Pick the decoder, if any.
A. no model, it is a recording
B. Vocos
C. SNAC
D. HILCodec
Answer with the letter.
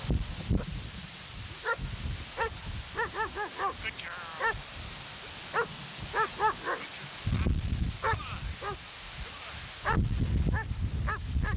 A